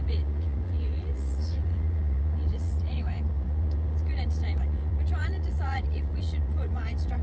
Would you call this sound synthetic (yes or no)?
yes